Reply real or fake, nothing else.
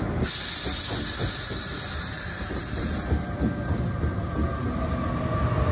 fake